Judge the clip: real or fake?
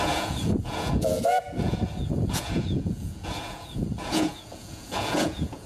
fake